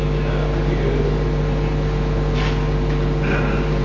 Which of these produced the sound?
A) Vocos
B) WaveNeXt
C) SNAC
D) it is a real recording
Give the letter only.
D